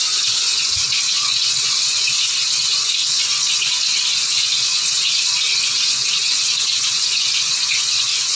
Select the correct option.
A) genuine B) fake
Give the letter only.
B